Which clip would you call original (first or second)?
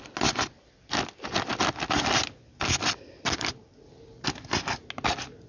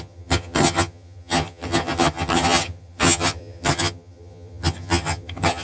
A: first